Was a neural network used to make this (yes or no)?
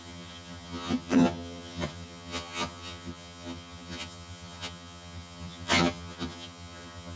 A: yes